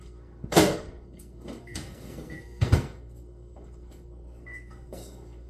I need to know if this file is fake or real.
fake